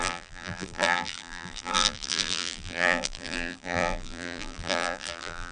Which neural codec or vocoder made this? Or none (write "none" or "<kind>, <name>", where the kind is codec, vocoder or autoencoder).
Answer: vocoder, BigVGAN v2